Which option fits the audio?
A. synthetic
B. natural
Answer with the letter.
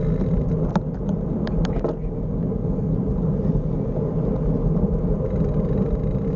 B